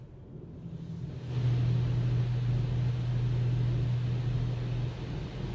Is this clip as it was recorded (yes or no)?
yes